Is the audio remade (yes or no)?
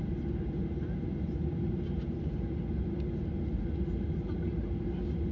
no